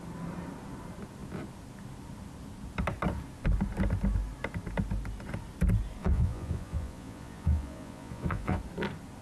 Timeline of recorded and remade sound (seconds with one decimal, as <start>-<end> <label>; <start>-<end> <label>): 0.0-6.0 recorded; 6.0-8.6 remade; 8.6-9.2 recorded